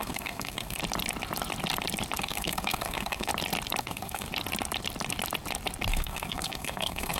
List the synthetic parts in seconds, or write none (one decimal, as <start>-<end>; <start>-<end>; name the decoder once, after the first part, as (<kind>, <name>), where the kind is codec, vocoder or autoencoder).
0.0-0.8 (codec, SNAC); 2.2-3.3; 3.8-4.3; 5.9-7.2